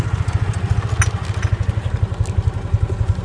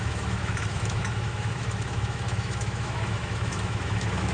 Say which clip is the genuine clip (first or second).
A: first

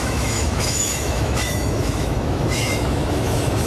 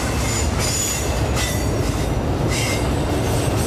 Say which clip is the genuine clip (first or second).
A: second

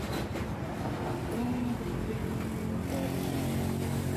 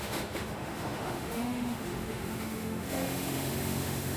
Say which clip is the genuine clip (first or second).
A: first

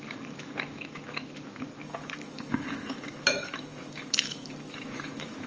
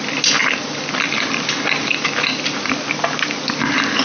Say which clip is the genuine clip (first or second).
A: second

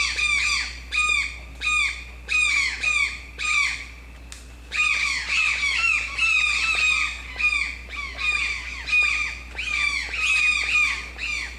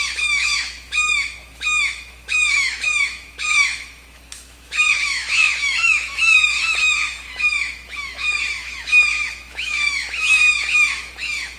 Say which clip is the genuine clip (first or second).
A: first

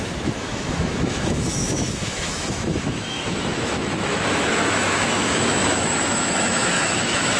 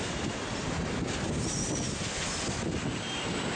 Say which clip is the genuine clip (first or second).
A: second